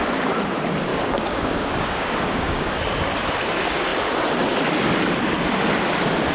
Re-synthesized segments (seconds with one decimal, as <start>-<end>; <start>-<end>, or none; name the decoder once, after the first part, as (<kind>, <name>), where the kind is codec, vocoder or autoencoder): 0.9-2.8 (codec, DAC)